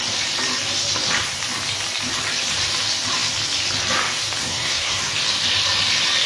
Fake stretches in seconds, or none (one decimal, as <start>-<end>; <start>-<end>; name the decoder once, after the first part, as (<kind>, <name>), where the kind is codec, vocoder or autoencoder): 4.4-5.0 (codec, SNAC)

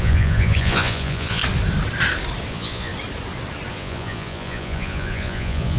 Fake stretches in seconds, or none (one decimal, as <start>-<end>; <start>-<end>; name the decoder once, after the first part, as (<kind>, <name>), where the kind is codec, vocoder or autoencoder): 0.0-1.4 (vocoder, Vocos); 2.5-2.9; 3.7-5.8

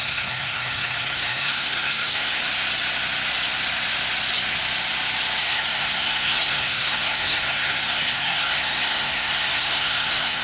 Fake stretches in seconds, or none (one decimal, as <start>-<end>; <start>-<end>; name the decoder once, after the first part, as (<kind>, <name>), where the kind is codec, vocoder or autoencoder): 0.0-2.4 (codec, SNAC); 5.4-10.4

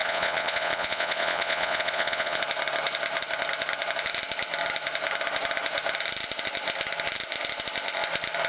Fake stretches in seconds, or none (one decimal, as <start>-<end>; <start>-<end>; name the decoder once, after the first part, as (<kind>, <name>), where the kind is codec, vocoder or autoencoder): 0.0-2.4 (vocoder, Vocos)

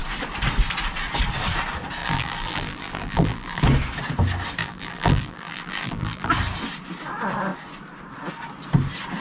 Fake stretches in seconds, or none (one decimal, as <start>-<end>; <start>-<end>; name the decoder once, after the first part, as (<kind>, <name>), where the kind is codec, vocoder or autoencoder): 2.0-3.6 (vocoder, BigVGAN v2); 4.6-6.3